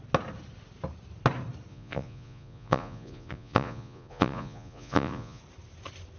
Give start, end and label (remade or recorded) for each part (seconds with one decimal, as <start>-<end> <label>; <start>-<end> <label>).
0.0-1.7 recorded; 1.7-5.4 remade; 5.4-6.2 recorded